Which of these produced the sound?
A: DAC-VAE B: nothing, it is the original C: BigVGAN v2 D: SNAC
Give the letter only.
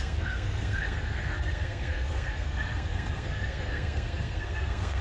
D